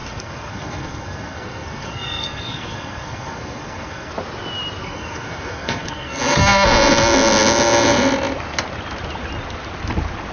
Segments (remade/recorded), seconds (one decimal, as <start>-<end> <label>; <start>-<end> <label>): 0.0-4.1 remade; 4.1-4.8 recorded; 4.8-6.2 remade; 6.2-10.3 recorded